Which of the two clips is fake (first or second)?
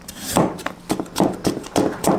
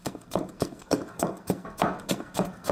second